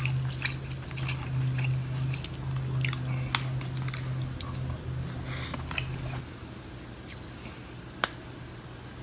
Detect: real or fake real